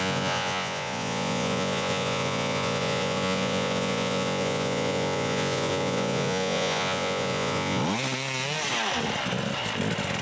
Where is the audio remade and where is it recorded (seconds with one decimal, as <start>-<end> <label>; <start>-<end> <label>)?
0.0-7.8 remade; 7.8-10.2 recorded